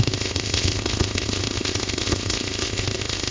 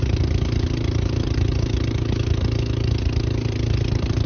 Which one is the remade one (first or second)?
first